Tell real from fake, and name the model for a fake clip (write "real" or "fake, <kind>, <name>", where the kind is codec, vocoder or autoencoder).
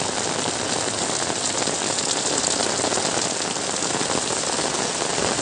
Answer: real